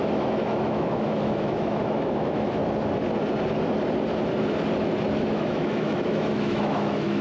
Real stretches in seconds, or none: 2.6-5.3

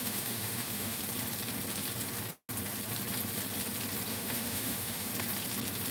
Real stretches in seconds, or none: 1.0-4.1; 5.1-5.9